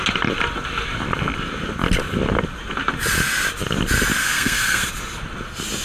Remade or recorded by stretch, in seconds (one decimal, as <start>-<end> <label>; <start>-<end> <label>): 0.0-4.2 recorded; 4.2-4.9 remade; 4.9-5.8 recorded